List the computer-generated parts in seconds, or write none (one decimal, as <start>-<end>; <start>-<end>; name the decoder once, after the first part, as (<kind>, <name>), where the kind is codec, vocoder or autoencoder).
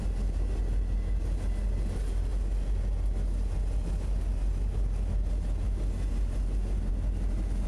none